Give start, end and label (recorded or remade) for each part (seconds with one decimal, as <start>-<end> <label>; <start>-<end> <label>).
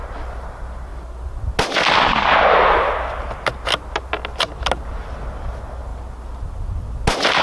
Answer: 0.0-7.4 recorded